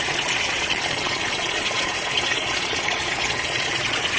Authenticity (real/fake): fake